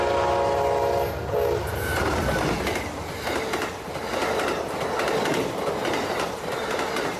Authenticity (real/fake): real